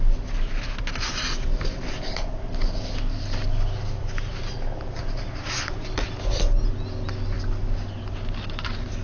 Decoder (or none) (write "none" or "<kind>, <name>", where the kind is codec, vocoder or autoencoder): none